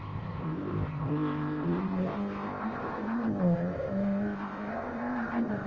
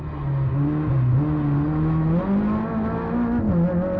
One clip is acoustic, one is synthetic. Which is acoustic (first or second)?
second